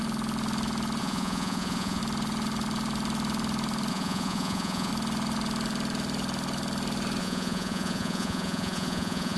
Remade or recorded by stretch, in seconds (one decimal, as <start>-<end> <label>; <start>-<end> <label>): 0.0-1.0 recorded; 1.0-2.0 remade; 2.0-3.9 recorded; 3.9-4.9 remade; 4.9-7.2 recorded; 7.2-9.4 remade